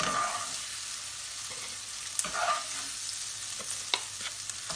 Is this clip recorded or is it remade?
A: recorded